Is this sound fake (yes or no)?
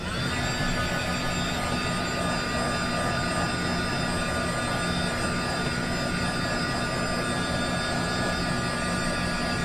no